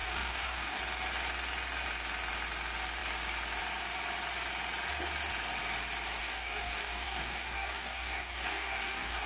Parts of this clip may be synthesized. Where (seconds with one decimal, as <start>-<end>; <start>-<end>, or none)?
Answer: 0.0-0.8; 6.2-9.3